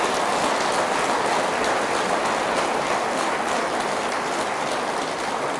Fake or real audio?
real